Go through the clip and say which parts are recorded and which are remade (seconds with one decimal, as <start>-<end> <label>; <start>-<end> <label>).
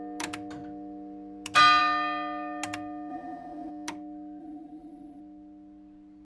0.0-3.1 recorded; 3.1-3.7 remade; 3.7-4.4 recorded; 4.4-5.2 remade; 5.2-6.2 recorded